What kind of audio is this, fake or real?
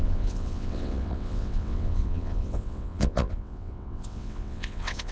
fake